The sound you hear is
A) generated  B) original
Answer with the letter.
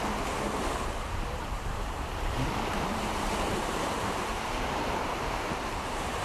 A